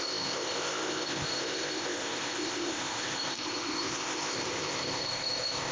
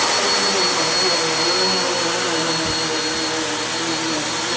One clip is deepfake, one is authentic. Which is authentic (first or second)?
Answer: second